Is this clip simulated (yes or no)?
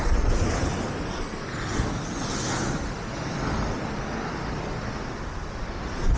no